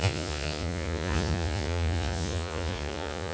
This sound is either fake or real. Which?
fake